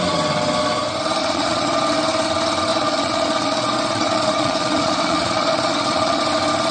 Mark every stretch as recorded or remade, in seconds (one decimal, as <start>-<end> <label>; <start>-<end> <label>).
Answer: 0.0-1.2 recorded; 1.2-1.8 remade; 1.8-2.7 recorded; 2.7-6.2 remade; 6.2-6.7 recorded